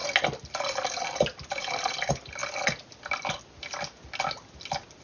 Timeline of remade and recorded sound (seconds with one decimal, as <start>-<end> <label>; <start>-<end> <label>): 0.0-5.0 recorded